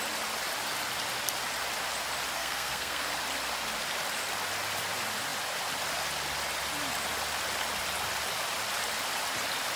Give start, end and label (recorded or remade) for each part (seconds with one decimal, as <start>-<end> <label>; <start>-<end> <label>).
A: 0.0-2.4 recorded; 2.4-3.0 remade; 3.0-9.8 recorded